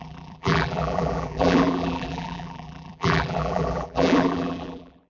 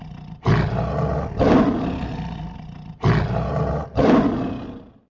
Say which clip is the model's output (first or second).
first